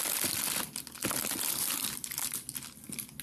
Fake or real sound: real